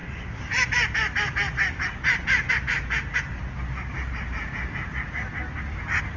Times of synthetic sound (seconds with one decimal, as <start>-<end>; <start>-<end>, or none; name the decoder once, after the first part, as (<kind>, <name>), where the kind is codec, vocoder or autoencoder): none